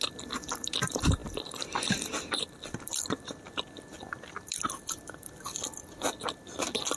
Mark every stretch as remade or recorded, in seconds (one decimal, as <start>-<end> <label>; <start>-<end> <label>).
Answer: 0.0-7.0 recorded